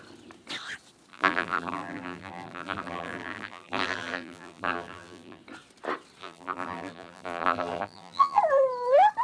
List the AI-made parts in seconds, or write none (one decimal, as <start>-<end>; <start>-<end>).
1.1-5.4; 6.2-8.4